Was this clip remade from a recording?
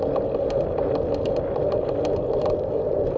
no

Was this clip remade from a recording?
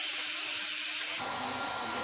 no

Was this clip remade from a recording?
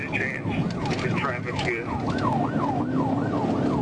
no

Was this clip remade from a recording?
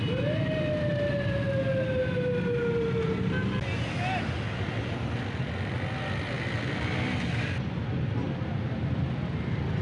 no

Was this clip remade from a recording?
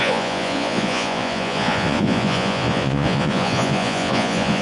yes